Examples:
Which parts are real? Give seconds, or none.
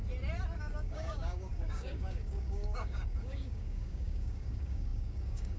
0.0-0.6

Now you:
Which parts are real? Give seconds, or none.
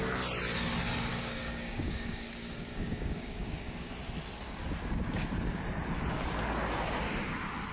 0.0-1.1; 3.9-7.7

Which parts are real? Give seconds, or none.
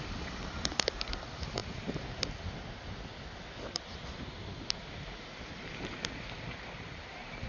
0.0-7.5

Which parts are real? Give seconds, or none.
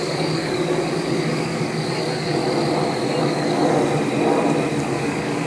2.4-3.2; 3.6-4.8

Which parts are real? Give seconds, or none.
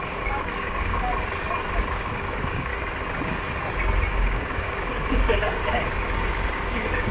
1.1-1.9; 2.7-4.1; 5.6-6.3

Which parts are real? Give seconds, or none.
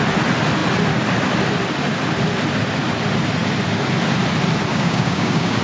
0.0-4.7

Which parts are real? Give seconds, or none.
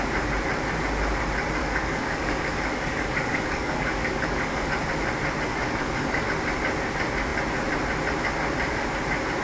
0.0-1.6; 4.7-5.5; 6.3-9.4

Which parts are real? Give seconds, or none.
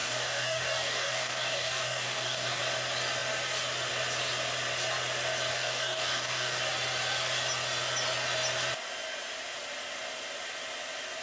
2.6-5.5; 6.6-11.2